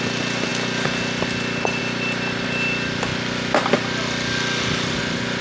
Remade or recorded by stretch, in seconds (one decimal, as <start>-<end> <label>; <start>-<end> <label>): 0.0-5.4 recorded